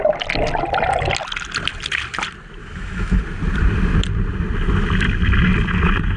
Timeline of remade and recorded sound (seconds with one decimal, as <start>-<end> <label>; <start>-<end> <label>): 0.0-2.6 recorded; 2.6-3.2 remade; 3.2-6.2 recorded